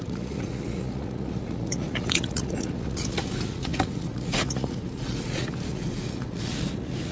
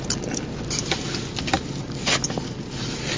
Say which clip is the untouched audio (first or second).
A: second